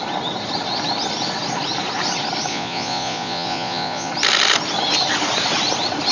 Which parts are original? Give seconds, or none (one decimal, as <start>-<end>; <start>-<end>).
0.0-2.5; 4.1-6.1